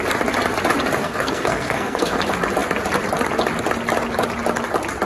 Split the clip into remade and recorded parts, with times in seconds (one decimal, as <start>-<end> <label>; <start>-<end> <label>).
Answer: 0.0-1.0 recorded; 1.0-2.2 remade; 2.2-5.0 recorded